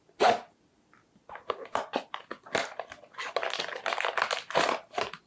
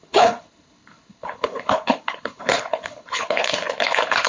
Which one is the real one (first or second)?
first